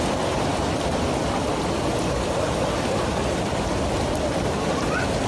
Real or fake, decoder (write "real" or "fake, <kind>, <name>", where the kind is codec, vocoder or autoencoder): real